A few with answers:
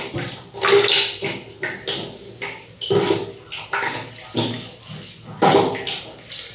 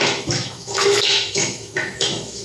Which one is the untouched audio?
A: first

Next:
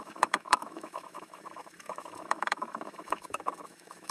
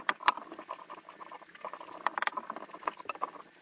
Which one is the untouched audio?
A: second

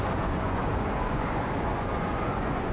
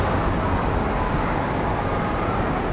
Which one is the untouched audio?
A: second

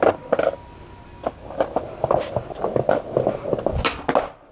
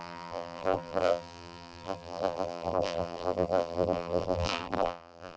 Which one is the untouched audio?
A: first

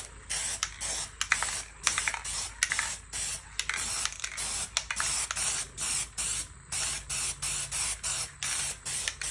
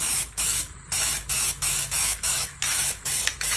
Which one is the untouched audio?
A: first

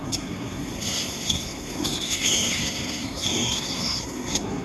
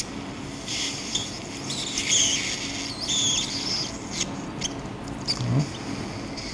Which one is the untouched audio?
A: second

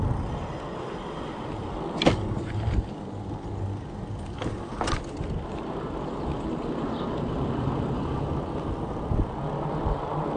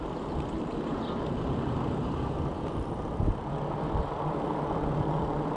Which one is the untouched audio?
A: first